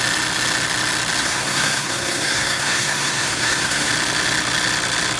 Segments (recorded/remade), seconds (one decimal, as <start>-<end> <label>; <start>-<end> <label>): 0.0-1.2 recorded; 1.2-3.9 remade; 3.9-5.2 recorded